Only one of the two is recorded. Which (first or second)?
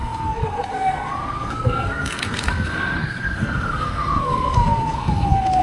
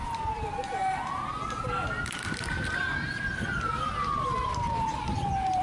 second